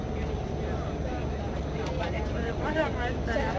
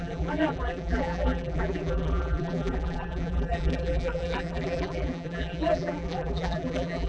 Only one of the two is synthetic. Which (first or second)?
second